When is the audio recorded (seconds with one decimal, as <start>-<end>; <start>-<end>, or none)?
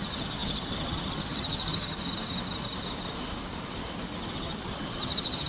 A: 2.0-4.3